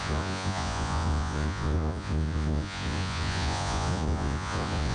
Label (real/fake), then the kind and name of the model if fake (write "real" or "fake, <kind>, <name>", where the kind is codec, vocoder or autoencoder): fake, vocoder, Vocos